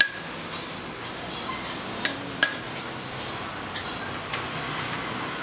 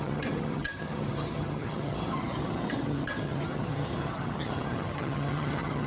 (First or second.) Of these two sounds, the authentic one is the first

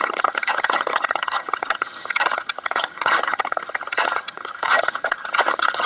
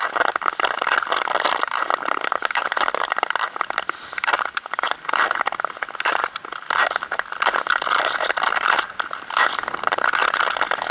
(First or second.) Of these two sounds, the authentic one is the second